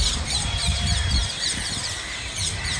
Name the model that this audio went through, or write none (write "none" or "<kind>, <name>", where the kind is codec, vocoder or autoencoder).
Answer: vocoder, BigVGAN v2